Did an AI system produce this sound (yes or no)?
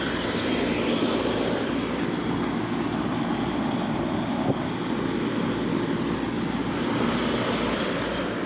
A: no